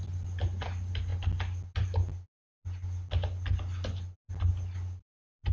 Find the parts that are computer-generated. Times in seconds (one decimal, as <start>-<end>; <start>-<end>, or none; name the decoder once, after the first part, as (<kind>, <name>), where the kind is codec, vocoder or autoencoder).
none